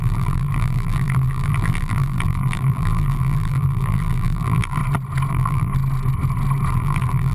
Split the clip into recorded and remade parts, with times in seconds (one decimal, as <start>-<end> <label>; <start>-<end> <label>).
0.0-4.8 remade; 4.8-5.3 recorded; 5.3-5.7 remade; 5.7-6.7 recorded; 6.7-7.3 remade